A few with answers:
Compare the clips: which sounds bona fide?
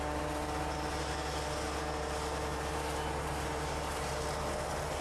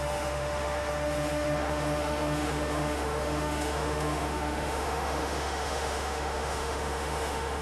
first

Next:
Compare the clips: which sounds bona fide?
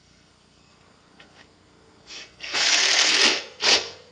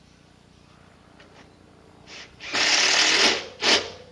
second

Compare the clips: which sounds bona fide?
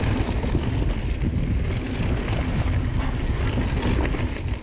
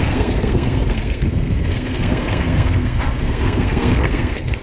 first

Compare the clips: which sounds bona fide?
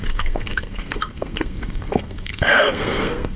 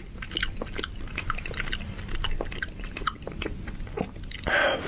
second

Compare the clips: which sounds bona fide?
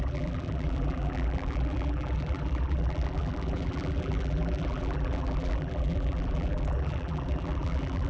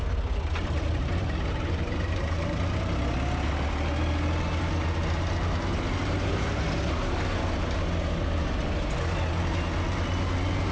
second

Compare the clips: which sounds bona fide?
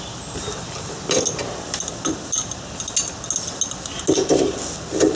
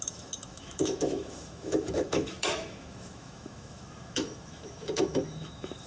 first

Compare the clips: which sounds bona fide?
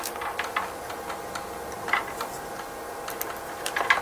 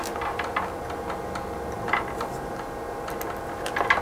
second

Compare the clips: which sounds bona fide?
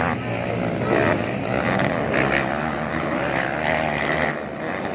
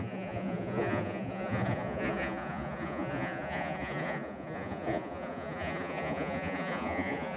first